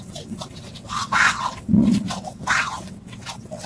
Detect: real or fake fake